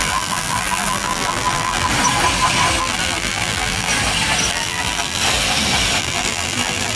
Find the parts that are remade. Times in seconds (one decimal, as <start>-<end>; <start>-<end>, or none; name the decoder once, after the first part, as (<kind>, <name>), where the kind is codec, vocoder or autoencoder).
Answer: 0.0-1.9 (vocoder, BigVGAN v2); 2.8-3.9; 4.5-5.2; 6.0-7.0